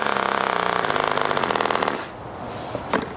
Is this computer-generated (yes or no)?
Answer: no